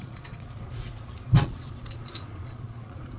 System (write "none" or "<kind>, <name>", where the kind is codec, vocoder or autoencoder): vocoder, Vocos